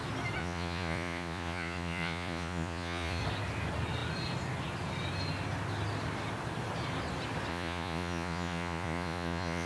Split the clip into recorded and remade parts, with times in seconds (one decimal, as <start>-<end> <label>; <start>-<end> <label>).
0.0-0.4 recorded; 0.4-3.2 remade; 3.2-7.5 recorded; 7.5-9.7 remade